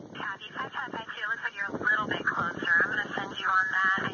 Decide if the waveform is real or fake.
real